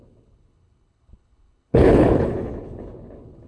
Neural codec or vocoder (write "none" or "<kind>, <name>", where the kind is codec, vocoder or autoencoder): codec, HILCodec